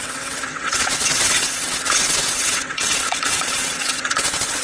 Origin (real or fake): fake